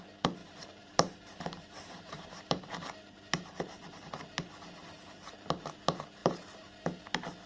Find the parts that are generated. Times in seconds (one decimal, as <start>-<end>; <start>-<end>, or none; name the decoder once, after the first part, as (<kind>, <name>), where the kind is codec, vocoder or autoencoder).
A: 0.4-4.1 (vocoder, BigVGAN v2); 6.2-6.7